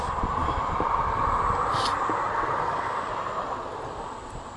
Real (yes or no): yes